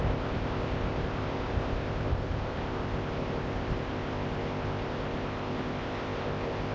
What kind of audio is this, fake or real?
fake